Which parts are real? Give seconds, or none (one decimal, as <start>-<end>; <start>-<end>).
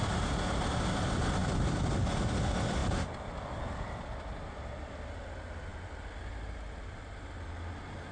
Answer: 0.0-8.1